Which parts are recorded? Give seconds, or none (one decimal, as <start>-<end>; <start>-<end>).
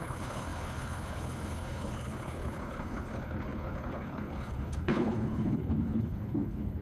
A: none